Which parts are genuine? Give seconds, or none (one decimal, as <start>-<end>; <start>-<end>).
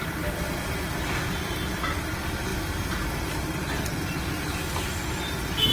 0.0-5.7